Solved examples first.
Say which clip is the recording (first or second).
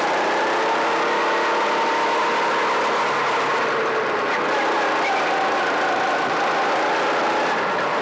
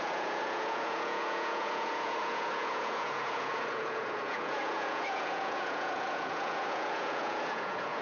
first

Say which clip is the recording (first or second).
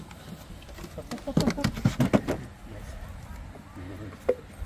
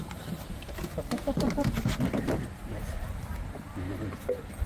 first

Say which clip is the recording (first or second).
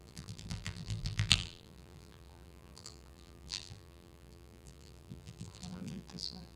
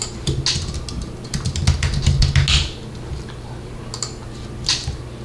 second